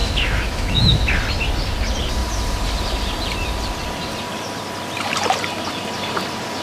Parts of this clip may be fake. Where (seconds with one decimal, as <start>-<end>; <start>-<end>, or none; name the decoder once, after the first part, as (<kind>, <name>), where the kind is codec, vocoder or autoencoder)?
0.0-1.0 (autoencoder, DAC-VAE)